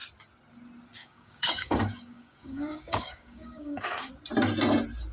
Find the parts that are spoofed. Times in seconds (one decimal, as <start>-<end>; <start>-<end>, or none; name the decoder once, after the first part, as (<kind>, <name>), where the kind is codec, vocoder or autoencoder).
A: 1.0-4.1 (codec, DAC)